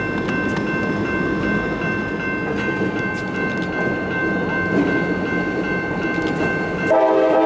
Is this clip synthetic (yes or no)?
no